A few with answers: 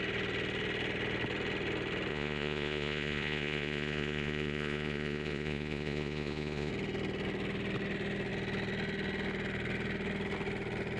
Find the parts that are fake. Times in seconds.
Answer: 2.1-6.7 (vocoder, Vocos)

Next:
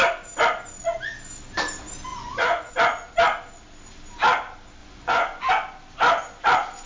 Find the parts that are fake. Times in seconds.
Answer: 2.1-2.7 (vocoder, Vocos); 4.8-5.5

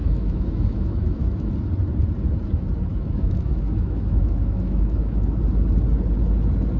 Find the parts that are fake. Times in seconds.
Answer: 0.0-1.5 (autoencoder, DAC-VAE); 2.9-5.4

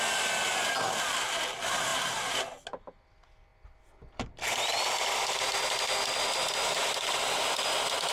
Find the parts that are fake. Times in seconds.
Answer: 1.9-2.4 (vocoder, BigVGAN v2)

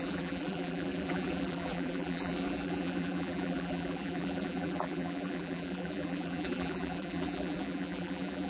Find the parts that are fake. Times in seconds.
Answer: 0.0-8.5 (vocoder, BigVGAN v2)

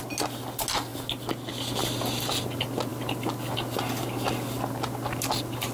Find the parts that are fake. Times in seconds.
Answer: none

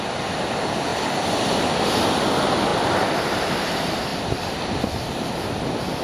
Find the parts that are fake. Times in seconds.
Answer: 2.7-3.2 (vocoder, BigVGAN v2); 4.1-4.6

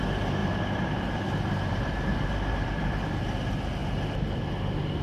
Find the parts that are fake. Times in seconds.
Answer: 0.4-3.1 (vocoder, BigVGAN v2)